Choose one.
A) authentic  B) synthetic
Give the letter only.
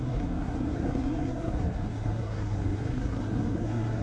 B